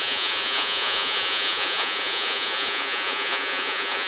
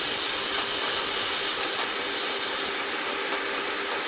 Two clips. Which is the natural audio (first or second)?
second